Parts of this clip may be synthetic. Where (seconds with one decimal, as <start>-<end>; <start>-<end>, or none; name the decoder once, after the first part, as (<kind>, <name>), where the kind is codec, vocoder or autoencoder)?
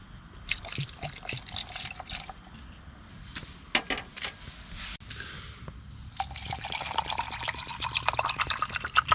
none